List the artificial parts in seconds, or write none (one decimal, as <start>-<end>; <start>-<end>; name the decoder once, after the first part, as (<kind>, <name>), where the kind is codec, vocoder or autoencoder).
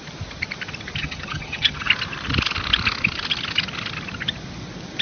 1.0-1.9 (vocoder, HiFi-GAN)